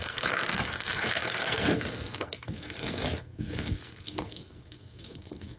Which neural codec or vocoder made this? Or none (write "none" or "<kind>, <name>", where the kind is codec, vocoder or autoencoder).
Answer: codec, SNAC